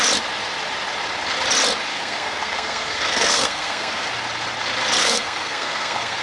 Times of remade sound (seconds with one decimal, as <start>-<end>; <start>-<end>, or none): 1.9-4.1; 5.0-6.2